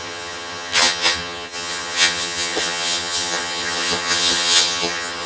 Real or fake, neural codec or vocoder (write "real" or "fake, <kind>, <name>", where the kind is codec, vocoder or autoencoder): fake, vocoder, HiFi-GAN